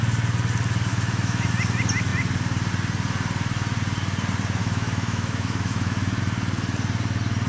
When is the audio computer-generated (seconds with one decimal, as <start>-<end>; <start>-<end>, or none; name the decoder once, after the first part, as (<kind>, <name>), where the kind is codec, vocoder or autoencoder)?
0.9-1.5 (autoencoder, DAC-VAE); 4.6-6.2